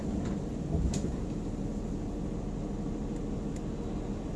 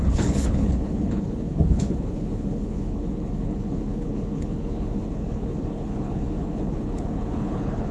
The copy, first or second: second